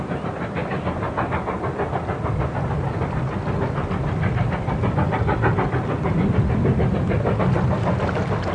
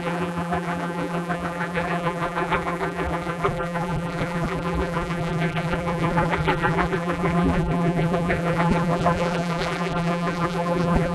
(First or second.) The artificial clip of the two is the second